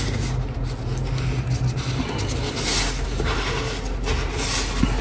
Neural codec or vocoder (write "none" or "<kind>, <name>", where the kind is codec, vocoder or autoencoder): none